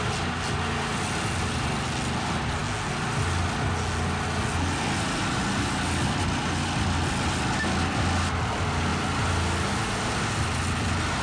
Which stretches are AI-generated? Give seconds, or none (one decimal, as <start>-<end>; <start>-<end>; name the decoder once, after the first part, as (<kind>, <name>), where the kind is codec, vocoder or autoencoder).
none